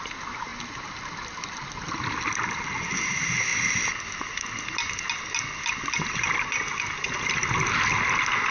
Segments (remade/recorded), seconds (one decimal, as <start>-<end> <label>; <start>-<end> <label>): 0.0-0.5 recorded; 0.5-3.0 remade; 3.0-8.5 recorded

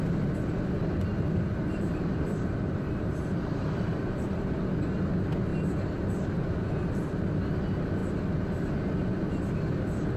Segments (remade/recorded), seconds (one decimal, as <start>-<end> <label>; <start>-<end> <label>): 0.0-1.1 recorded; 1.1-4.3 remade; 4.3-10.2 recorded

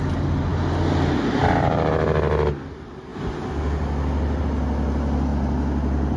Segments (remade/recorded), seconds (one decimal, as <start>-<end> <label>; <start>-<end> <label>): 0.0-6.2 recorded